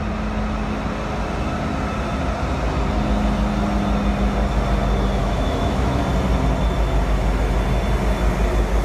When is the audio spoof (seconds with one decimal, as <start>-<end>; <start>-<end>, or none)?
5.2-6.0